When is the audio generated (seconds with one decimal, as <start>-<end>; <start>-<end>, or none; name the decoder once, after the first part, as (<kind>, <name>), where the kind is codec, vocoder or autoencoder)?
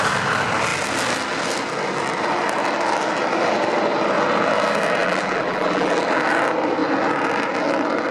5.0-6.2 (vocoder, BigVGAN v2)